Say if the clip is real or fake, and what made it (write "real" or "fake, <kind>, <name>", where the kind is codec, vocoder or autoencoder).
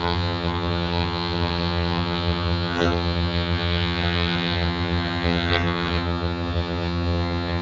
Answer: fake, vocoder, HiFi-GAN